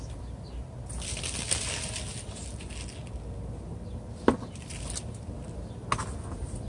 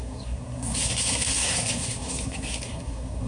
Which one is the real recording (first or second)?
first